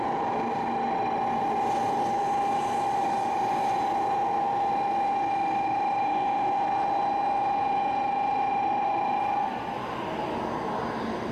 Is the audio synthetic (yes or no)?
no